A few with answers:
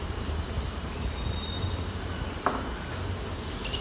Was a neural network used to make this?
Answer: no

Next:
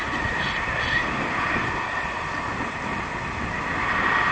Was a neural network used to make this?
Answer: no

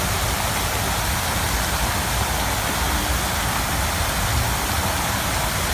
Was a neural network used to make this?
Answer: no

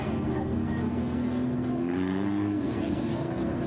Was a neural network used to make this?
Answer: yes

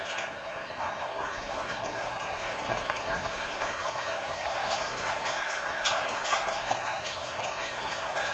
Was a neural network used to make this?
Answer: yes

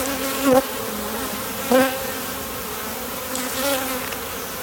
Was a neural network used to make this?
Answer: no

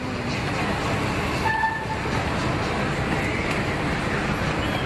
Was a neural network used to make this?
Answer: no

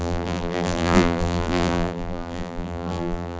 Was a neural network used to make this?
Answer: yes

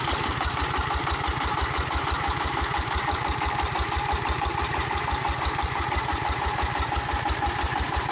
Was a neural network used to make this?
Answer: yes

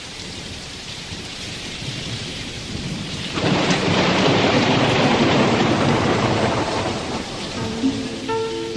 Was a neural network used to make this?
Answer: yes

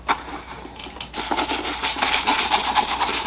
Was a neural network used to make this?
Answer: yes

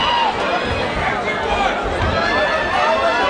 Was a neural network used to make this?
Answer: no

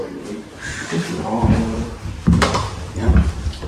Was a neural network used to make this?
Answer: yes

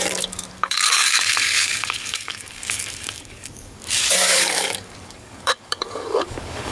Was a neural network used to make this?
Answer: yes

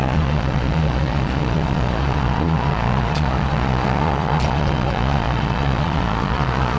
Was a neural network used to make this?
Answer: yes